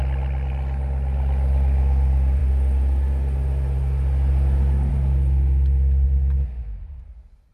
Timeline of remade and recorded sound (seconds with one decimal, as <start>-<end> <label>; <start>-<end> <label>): 0.0-7.5 recorded